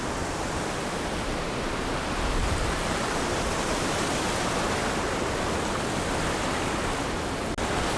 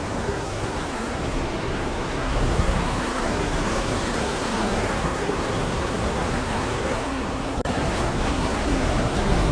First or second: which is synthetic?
second